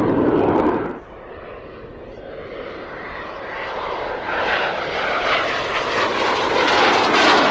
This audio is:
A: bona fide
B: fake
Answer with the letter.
A